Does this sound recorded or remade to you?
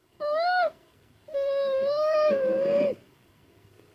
remade